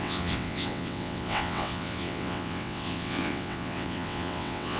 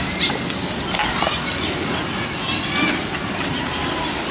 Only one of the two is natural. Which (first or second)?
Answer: second